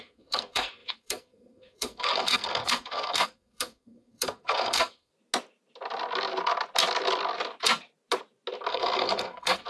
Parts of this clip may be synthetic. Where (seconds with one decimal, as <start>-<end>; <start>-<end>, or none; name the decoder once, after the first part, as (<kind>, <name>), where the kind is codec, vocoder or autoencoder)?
0.0-5.1 (codec, SNAC); 8.7-9.7